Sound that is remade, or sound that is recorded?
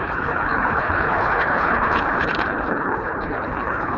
remade